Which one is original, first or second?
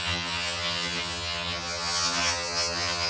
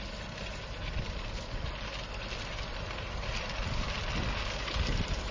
second